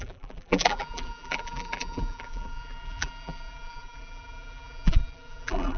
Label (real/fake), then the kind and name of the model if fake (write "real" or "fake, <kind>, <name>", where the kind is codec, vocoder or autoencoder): fake, vocoder, BigVGAN v2